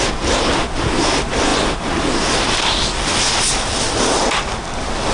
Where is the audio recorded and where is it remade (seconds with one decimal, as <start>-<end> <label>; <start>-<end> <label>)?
0.0-5.1 recorded